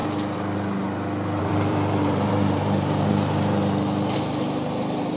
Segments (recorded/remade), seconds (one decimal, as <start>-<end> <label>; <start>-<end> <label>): 0.0-1.4 recorded; 1.4-5.2 remade